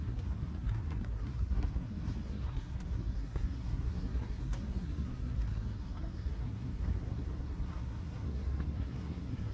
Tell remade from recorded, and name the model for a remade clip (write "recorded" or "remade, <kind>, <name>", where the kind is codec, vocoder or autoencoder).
remade, codec, SNAC